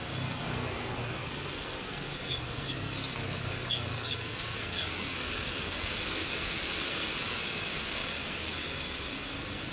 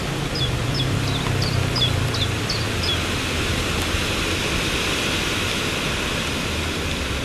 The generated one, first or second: first